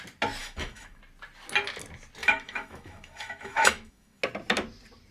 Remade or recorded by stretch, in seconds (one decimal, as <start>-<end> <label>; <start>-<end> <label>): 0.0-0.4 recorded; 0.4-1.0 remade; 1.0-2.2 recorded; 2.2-4.2 remade; 4.2-5.1 recorded